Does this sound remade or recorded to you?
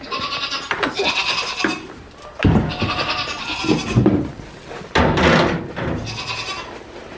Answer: recorded